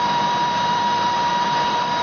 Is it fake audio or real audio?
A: fake